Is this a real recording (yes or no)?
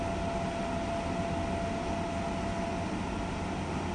yes